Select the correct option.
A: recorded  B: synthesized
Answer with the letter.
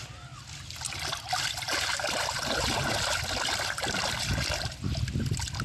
A